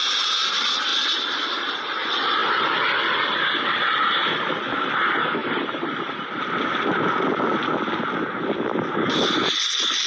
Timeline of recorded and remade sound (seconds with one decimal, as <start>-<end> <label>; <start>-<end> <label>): 0.0-10.1 recorded